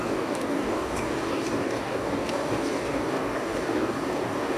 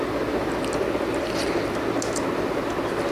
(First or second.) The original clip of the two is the second